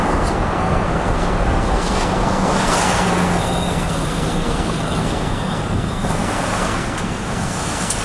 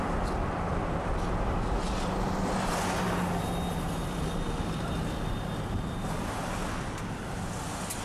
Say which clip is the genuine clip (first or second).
second